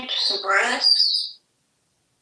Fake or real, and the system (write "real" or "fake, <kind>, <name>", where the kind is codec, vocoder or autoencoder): real